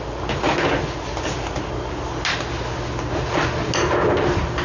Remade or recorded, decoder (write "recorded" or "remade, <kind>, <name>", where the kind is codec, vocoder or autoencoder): recorded